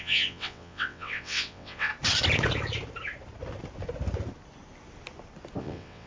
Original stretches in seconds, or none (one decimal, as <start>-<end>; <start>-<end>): 1.9-5.6